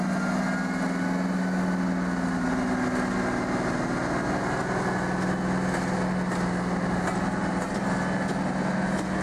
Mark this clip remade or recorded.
recorded